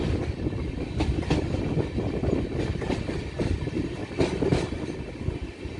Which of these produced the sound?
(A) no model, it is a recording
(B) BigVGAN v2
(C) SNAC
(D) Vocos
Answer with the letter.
A